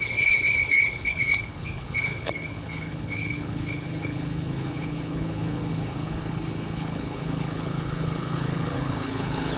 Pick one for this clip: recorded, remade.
remade